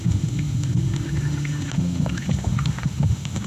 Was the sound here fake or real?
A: fake